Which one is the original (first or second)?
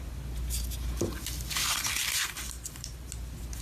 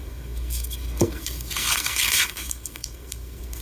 first